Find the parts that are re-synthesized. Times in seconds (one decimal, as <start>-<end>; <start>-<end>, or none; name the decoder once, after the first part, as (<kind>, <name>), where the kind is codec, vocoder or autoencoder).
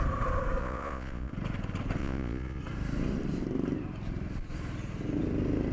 0.6-1.3 (vocoder, Vocos); 2.0-2.6